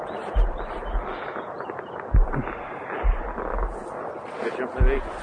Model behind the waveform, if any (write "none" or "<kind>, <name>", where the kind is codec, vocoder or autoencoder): none